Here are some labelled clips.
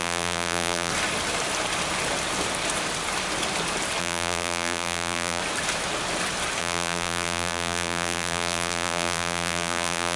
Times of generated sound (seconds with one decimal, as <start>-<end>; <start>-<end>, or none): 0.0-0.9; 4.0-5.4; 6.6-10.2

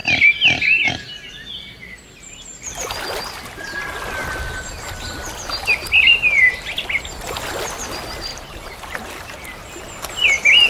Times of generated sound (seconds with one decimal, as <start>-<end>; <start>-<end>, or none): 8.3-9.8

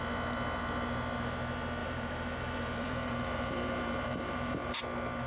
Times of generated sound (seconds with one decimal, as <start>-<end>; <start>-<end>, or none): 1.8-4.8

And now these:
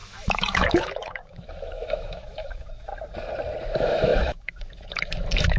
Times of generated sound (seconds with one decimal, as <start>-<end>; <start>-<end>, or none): 0.0-2.9; 3.6-5.6

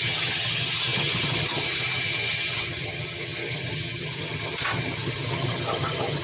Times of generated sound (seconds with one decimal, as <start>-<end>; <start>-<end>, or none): 0.0-6.2

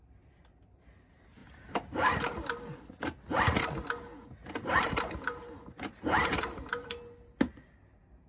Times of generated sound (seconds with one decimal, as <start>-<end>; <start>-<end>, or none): 1.4-2.8; 4.4-6.9

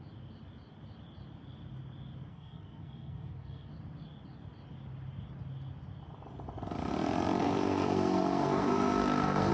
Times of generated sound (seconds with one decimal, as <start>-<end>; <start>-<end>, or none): 2.3-3.7; 7.4-9.5

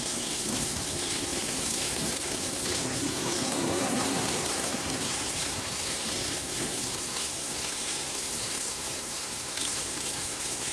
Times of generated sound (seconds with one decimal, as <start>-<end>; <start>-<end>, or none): 0.0-10.7